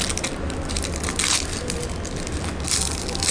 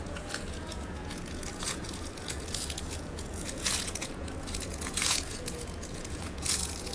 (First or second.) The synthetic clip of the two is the second